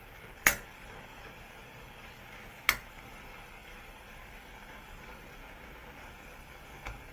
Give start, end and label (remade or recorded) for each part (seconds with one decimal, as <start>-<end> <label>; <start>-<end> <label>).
0.0-2.2 remade; 2.2-2.9 recorded; 2.9-5.4 remade; 5.4-6.0 recorded; 6.0-7.1 remade